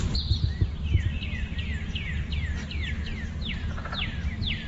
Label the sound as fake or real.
real